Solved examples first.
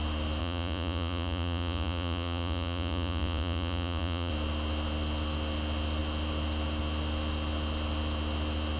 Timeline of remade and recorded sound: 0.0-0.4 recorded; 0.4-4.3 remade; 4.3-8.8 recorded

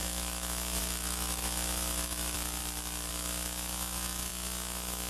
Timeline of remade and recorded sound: 0.0-2.6 remade; 2.6-3.1 recorded; 3.1-5.1 remade

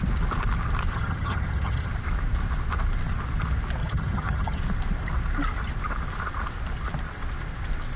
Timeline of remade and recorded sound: 0.0-0.9 recorded; 0.9-1.9 remade; 1.9-3.8 recorded; 3.8-4.6 remade; 4.6-8.0 recorded